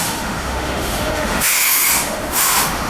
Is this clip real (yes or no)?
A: no